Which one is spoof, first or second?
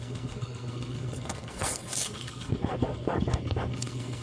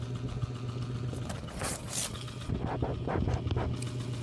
first